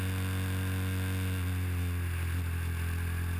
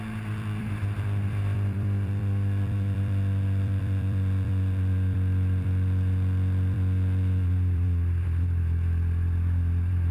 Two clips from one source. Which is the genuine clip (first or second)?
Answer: first